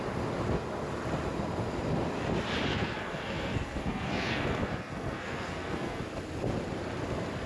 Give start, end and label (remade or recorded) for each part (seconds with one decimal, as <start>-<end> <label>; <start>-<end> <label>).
0.0-2.7 recorded; 2.7-6.0 remade; 6.0-7.5 recorded